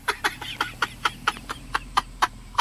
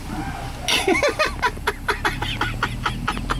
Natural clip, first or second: second